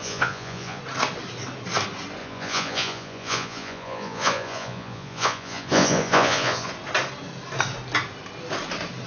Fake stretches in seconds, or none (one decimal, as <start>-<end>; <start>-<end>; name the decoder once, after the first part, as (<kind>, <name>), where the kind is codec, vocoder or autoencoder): 0.0-0.8 (vocoder, Vocos); 2.2-6.7

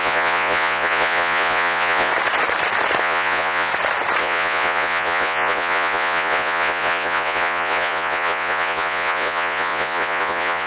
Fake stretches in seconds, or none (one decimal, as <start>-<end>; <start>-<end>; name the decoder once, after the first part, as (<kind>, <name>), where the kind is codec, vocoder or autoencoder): 0.0-2.1 (vocoder, Vocos); 3.0-3.7; 4.2-10.7

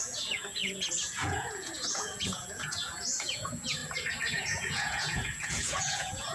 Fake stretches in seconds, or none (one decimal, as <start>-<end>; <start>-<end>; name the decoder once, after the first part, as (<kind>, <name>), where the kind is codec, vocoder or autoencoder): 0.0-3.8 (vocoder, Vocos); 4.3-6.3

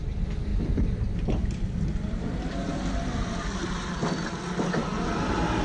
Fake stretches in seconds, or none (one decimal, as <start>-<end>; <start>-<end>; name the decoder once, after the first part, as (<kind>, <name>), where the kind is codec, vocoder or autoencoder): none

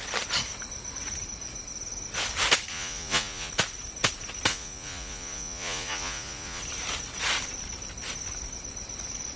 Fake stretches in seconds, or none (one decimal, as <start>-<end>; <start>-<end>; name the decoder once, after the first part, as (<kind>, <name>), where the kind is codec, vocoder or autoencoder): 2.7-3.5 (vocoder, Vocos); 4.5-6.6

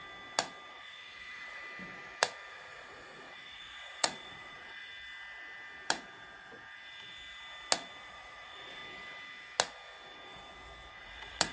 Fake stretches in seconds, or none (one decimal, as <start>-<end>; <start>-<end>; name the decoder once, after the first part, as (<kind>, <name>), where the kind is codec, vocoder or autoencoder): 0.7-1.6 (vocoder, Vocos); 2.5-4.9; 8.0-8.8; 10.9-11.5

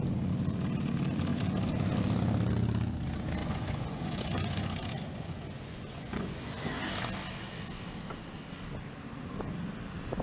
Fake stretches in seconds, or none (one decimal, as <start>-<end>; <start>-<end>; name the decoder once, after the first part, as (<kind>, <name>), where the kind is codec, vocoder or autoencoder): 3.4-6.9 (vocoder, Vocos)